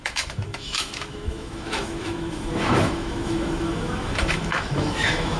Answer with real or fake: fake